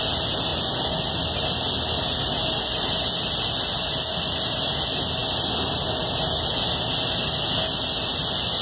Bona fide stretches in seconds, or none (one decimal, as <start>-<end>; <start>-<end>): 0.0-8.6